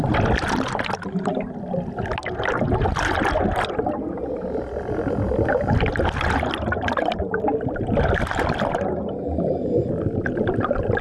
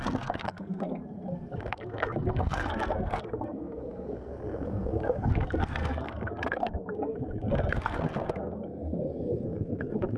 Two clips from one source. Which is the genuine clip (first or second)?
first